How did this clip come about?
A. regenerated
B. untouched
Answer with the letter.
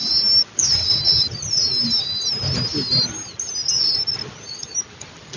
B